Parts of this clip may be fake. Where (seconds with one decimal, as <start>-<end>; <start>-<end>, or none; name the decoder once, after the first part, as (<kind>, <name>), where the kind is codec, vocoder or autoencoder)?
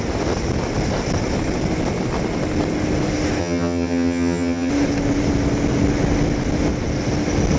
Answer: 3.4-4.7 (vocoder, HiFi-GAN)